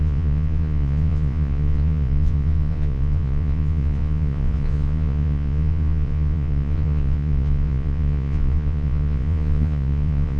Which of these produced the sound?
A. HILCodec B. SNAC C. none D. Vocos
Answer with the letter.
D